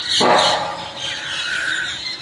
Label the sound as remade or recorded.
recorded